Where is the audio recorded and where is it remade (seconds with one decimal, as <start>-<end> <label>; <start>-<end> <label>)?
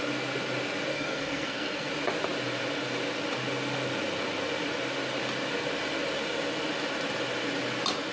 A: 0.0-0.9 recorded; 0.9-1.9 remade; 1.9-8.1 recorded